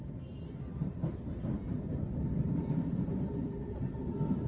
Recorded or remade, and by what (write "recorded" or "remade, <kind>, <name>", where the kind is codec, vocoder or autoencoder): remade, vocoder, BigVGAN v2